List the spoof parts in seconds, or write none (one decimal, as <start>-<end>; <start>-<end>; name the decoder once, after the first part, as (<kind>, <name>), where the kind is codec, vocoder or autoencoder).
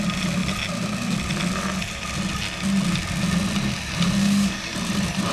4.2-4.7 (codec, DAC)